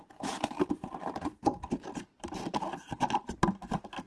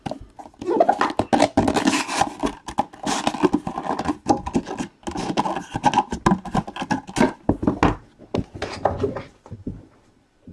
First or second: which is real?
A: second